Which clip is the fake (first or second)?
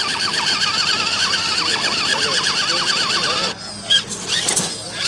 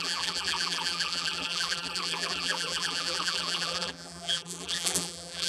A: second